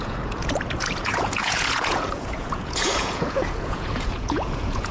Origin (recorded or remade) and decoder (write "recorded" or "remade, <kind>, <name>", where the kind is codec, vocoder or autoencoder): remade, vocoder, Vocos